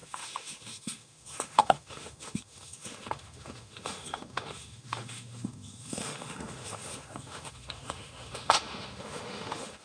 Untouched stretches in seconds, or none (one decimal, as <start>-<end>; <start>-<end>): none

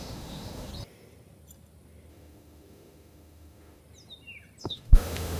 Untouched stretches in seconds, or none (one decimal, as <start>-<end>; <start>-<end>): 0.7-2.1; 3.8-4.6

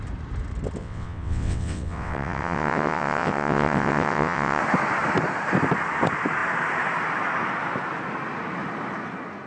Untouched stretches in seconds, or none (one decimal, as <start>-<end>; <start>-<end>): 0.0-0.8; 4.6-9.5

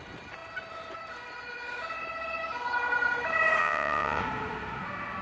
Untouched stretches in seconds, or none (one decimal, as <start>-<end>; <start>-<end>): 0.0-3.6; 4.2-5.2